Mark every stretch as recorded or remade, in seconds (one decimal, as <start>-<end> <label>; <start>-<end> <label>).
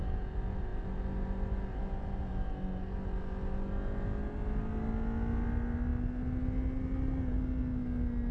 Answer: 0.0-8.3 recorded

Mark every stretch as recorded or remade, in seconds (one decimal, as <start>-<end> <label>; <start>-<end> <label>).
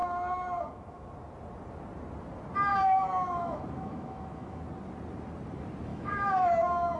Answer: 0.0-1.1 remade; 1.1-2.7 recorded; 2.7-4.6 remade; 4.6-5.9 recorded; 5.9-7.0 remade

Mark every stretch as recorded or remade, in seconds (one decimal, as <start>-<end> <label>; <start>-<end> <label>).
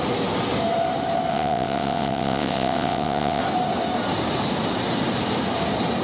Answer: 0.0-1.3 recorded; 1.3-3.4 remade; 3.4-6.0 recorded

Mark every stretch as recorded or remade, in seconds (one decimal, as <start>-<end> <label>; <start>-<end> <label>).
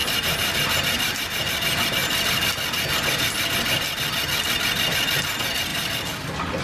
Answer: 0.0-0.7 remade; 0.7-2.0 recorded; 2.0-2.9 remade; 2.9-5.7 recorded; 5.7-6.6 remade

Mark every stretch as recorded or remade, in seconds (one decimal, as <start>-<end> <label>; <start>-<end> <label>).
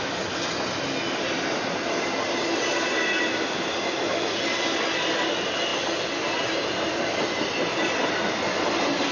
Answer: 0.0-9.1 recorded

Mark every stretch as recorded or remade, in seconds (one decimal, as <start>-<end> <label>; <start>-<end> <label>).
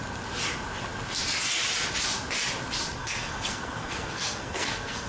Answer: 0.0-3.0 recorded; 3.0-5.1 remade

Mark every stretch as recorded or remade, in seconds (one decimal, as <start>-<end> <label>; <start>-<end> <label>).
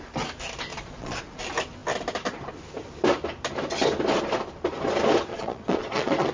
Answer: 0.0-0.7 recorded; 0.7-1.2 remade; 1.2-5.3 recorded; 5.3-6.3 remade